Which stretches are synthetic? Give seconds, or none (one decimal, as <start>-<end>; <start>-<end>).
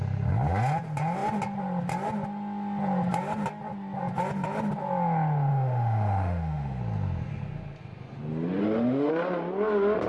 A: 5.5-6.8; 8.6-9.1